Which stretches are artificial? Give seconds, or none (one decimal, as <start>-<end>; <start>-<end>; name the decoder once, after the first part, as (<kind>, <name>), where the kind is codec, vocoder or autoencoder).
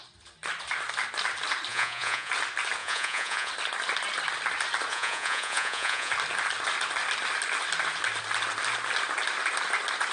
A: 1.7-2.3 (vocoder, Vocos); 2.8-3.5; 4.9-6.1